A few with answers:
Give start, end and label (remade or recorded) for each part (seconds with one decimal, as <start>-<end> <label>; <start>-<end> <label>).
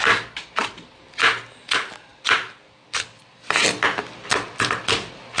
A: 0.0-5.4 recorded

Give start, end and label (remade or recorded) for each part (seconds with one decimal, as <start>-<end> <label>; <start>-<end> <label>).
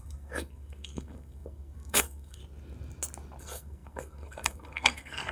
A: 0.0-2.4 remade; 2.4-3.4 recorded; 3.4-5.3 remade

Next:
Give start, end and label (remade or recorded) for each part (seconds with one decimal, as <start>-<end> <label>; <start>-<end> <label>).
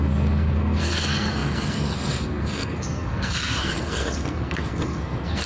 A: 0.0-5.5 remade